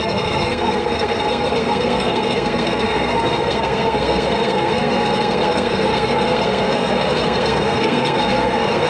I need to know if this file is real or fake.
fake